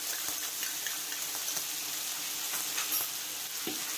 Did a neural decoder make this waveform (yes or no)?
no